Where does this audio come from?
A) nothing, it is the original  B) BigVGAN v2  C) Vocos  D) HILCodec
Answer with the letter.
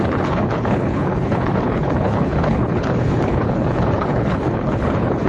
D